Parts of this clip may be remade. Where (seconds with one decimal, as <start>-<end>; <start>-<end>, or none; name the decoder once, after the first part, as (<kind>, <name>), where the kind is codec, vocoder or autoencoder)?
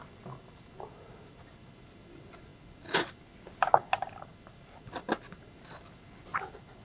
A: none